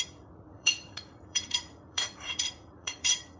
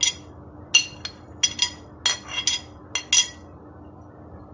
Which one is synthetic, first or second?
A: first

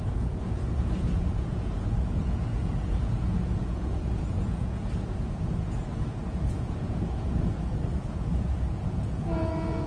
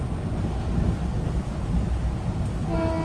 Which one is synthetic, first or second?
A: first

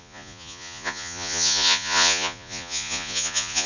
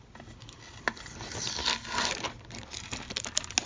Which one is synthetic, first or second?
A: first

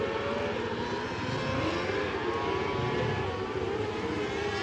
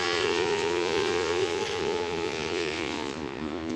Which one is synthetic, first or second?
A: second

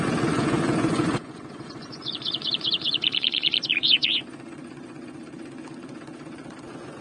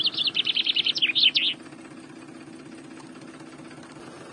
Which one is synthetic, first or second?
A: first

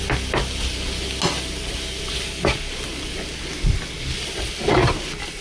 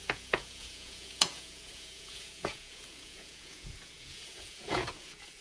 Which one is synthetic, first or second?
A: second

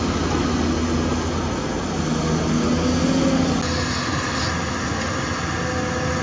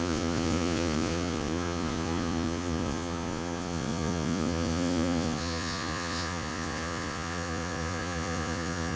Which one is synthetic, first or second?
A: second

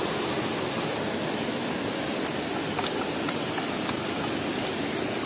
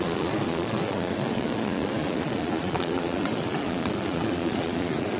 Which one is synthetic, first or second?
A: second